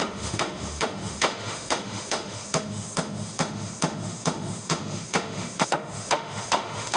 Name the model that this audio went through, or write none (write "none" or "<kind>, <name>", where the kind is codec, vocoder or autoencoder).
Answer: autoencoder, DAC-VAE